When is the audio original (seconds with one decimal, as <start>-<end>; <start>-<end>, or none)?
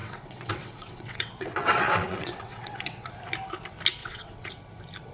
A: 3.1-4.0; 4.5-5.1